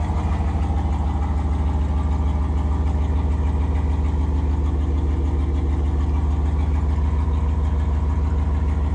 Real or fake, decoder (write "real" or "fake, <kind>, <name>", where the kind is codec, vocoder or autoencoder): real